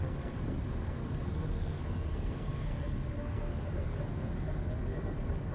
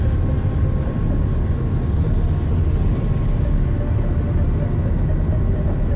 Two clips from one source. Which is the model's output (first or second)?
first